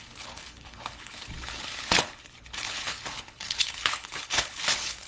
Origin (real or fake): fake